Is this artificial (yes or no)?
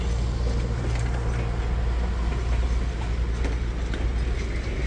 no